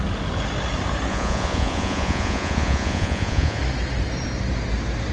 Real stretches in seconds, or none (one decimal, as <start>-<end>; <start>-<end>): 0.0-1.1; 3.6-5.1